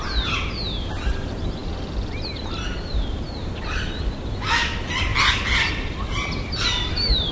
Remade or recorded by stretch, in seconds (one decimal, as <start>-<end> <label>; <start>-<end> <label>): 0.0-5.1 recorded; 5.1-7.3 remade